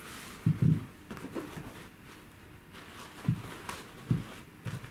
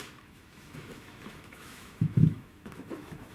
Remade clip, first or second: second